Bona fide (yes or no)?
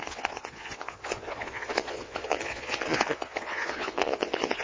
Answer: no